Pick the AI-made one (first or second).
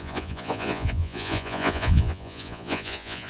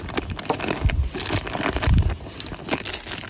first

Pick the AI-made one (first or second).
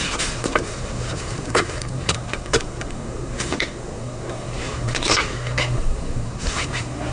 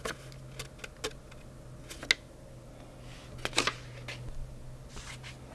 first